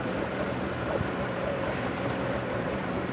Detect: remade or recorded remade